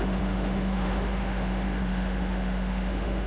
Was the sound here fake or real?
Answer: fake